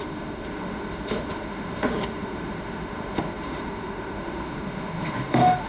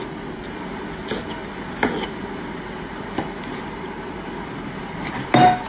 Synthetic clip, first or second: first